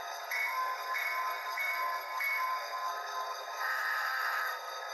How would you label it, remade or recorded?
remade